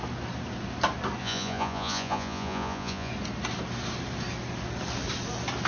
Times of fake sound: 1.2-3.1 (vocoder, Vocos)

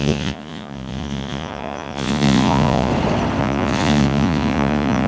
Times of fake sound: 0.0-2.9 (vocoder, Vocos); 3.4-5.1

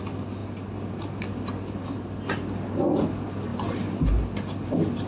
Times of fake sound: none

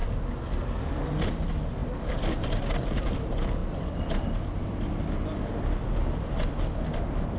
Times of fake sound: none